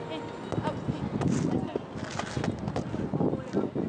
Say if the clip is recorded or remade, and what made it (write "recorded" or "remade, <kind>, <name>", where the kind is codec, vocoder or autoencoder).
recorded